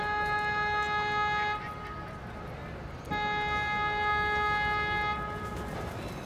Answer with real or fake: real